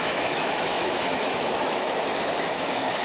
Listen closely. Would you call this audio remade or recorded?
remade